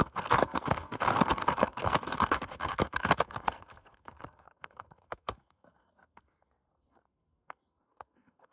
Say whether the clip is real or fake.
fake